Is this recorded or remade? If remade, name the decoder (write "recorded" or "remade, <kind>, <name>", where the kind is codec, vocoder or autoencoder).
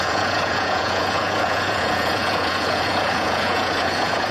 remade, vocoder, Vocos